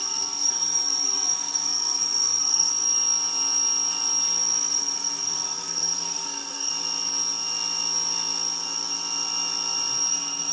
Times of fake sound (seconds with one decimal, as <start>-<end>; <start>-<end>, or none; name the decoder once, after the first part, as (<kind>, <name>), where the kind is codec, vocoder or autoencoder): 0.0-2.7 (codec, SNAC); 4.7-6.7; 10.1-10.5